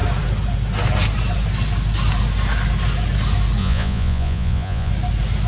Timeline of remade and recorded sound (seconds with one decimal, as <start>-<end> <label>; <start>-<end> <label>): 0.0-3.6 recorded; 3.6-4.9 remade; 4.9-5.5 recorded